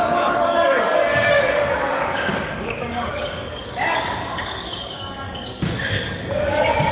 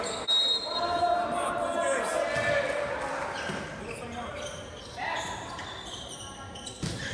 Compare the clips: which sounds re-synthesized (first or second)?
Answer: first